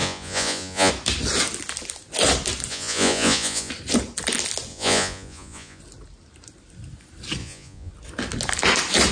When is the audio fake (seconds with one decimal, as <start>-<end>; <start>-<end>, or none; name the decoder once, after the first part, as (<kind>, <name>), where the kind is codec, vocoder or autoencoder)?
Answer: 0.0-0.9 (vocoder, Vocos); 2.7-3.7; 4.7-5.8; 7.4-7.9

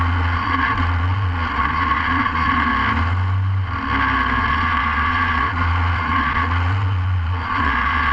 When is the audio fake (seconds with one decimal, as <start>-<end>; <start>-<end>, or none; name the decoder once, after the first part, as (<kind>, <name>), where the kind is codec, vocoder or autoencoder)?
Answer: 0.0-2.7 (vocoder, Vocos); 4.4-8.1

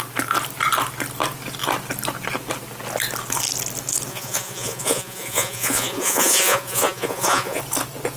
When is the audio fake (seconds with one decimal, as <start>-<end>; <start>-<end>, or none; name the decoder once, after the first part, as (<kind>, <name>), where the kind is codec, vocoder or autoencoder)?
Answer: 4.1-7.6 (vocoder, Vocos)

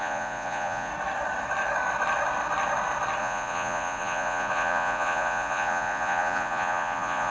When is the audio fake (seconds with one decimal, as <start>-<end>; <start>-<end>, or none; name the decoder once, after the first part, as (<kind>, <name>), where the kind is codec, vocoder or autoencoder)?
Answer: 0.0-0.9 (vocoder, Vocos); 3.2-7.3